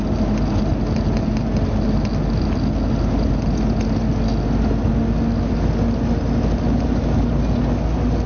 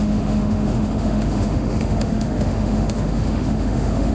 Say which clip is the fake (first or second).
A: second